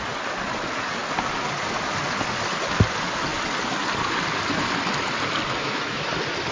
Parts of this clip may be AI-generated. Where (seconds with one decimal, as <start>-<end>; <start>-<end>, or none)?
5.6-6.1